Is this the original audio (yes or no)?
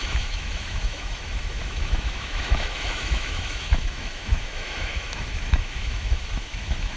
no